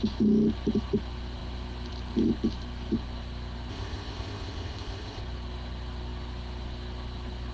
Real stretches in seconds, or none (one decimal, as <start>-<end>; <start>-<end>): 0.0-3.7; 5.2-7.5

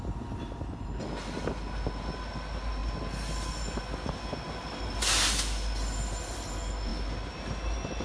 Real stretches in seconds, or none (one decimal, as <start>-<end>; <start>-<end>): 0.0-8.0

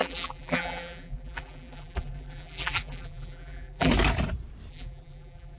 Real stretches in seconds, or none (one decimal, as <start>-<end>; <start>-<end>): 3.9-4.7

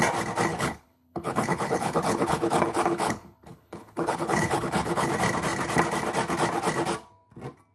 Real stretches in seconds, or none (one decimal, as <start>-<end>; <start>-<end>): 0.0-0.5; 5.1-7.7

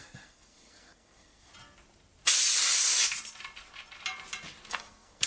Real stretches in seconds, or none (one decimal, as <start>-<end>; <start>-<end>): 1.5-4.7

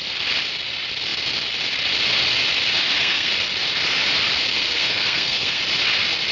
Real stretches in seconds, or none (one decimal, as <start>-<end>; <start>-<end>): 0.0-2.8; 3.3-4.5; 5.6-6.3